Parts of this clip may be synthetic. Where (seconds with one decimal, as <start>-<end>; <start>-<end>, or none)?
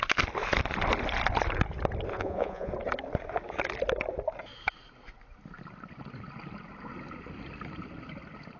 2.1-2.7